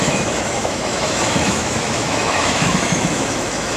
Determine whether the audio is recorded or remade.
remade